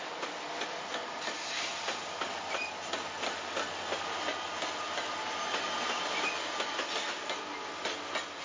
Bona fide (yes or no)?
yes